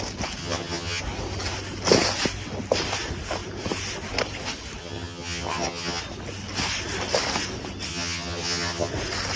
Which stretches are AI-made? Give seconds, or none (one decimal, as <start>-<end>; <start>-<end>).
0.4-1.0; 4.8-6.0; 7.9-8.9